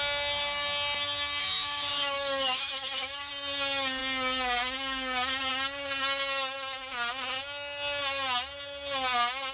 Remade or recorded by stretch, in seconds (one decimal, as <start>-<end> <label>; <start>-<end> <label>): 0.0-1.4 recorded; 1.4-3.3 remade; 3.3-9.5 recorded